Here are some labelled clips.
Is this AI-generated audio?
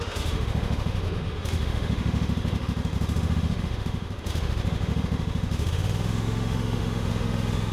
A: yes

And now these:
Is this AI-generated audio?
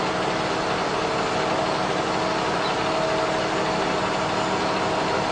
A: no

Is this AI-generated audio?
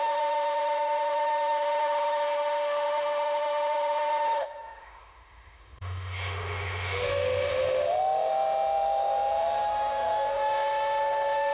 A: yes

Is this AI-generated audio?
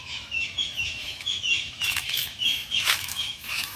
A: yes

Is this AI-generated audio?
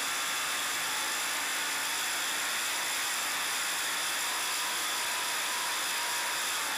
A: no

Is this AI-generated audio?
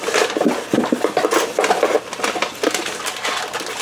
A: no